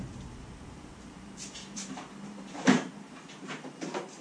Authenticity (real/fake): fake